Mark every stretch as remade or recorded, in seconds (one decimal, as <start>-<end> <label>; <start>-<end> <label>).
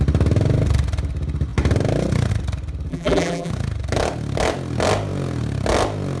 0.0-2.9 recorded; 2.9-3.5 remade; 3.5-6.2 recorded